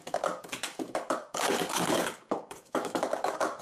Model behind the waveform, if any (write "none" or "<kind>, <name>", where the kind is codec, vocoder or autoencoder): codec, DAC